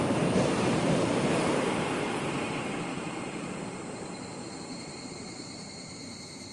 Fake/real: fake